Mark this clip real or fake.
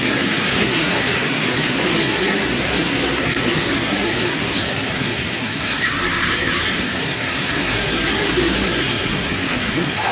fake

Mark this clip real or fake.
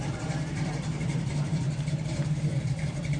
fake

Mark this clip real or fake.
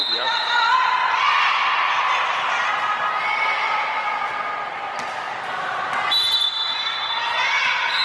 real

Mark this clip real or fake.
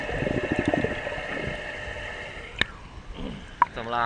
real